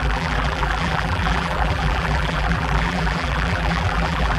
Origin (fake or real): fake